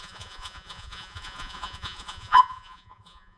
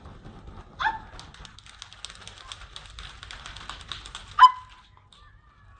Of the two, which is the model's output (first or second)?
first